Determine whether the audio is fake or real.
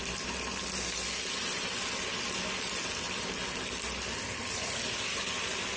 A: real